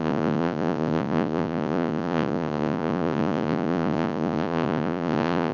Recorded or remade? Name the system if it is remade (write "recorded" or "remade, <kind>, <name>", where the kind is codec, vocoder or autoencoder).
remade, vocoder, Vocos